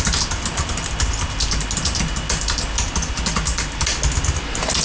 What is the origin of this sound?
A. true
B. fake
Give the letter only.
A